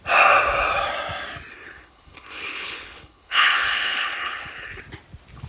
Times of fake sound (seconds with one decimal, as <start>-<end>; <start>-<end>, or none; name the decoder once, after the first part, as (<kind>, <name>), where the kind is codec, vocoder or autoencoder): 1.5-4.8 (codec, HILCodec)